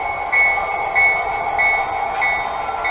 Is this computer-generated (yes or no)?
no